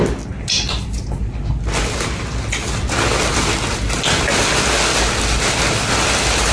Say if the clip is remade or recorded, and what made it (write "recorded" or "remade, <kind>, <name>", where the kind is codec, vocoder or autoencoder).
recorded